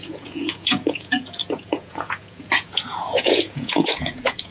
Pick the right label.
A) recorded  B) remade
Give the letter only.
B